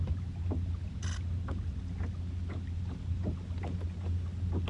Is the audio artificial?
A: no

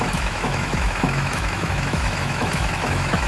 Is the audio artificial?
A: yes